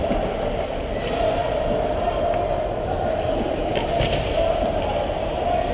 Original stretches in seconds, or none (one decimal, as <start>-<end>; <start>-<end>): 0.0-5.7